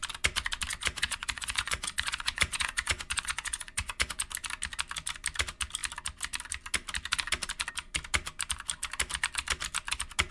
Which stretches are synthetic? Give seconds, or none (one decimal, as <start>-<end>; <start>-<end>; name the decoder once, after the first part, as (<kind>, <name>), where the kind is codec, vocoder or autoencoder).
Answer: 0.7-4.3 (vocoder, Vocos)